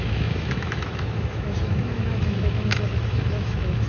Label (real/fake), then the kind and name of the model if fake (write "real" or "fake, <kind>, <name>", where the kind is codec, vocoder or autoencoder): fake, autoencoder, DAC-VAE